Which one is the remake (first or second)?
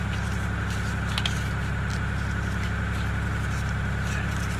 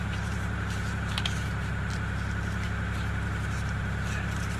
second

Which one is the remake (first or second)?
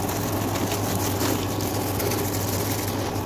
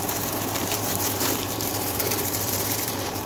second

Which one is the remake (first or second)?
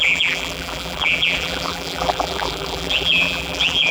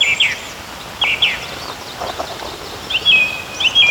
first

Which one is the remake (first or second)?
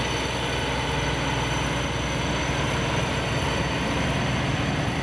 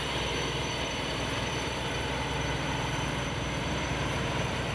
second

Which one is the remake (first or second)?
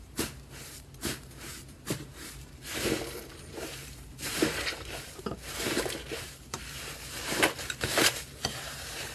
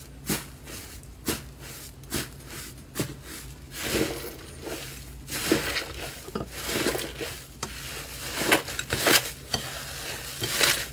first